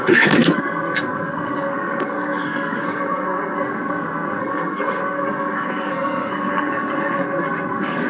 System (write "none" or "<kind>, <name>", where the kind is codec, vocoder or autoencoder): codec, SNAC